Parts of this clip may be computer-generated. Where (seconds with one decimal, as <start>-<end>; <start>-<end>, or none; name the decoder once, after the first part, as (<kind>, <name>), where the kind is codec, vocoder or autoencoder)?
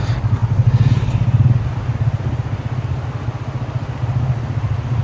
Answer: none